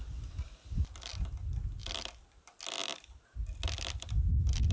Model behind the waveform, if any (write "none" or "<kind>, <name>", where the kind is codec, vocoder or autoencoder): none